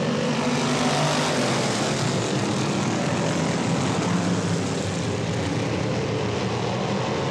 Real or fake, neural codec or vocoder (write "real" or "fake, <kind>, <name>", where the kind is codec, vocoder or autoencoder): real